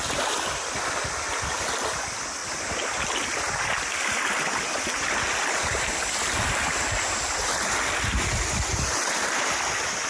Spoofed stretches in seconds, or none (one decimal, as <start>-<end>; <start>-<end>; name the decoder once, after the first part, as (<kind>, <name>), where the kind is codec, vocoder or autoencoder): none